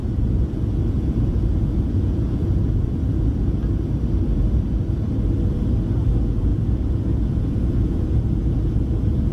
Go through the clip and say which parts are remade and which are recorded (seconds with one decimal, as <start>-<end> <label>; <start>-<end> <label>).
0.0-3.6 remade; 3.6-6.1 recorded; 6.1-9.3 remade